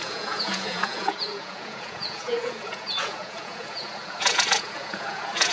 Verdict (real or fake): fake